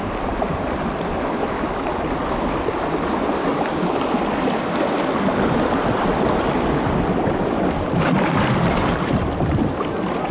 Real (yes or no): yes